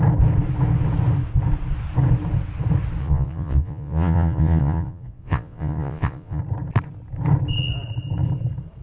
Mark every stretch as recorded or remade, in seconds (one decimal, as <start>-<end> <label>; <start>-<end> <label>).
0.0-3.0 recorded; 3.0-6.4 remade; 6.4-8.8 recorded